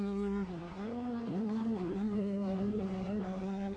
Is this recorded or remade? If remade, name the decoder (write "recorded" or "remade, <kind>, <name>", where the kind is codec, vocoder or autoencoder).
remade, codec, SNAC